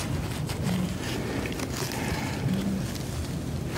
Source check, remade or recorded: recorded